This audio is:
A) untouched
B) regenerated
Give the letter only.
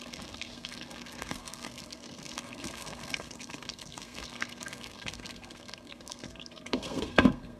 B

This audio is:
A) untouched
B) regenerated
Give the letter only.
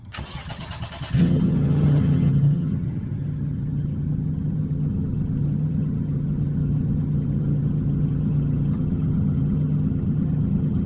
B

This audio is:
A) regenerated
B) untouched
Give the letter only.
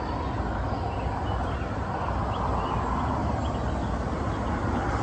B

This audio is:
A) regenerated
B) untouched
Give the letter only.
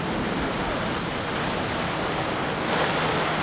B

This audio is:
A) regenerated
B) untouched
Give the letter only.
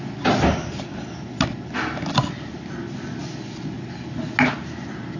B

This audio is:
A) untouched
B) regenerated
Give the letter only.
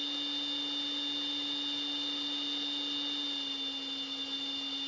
A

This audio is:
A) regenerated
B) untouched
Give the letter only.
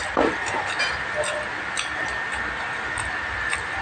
B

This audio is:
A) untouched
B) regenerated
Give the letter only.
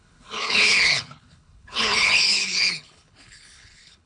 B